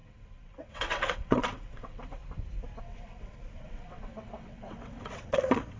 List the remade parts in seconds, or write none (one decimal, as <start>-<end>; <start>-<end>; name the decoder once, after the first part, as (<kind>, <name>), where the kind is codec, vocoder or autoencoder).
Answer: 0.0-2.2 (vocoder, WaveNeXt); 2.8-5.8